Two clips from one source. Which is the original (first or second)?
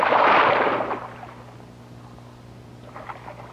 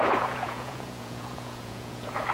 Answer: first